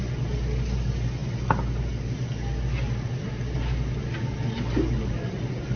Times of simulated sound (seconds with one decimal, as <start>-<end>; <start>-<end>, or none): none